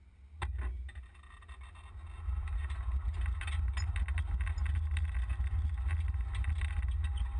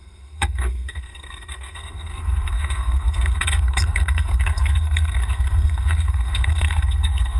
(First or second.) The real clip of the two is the first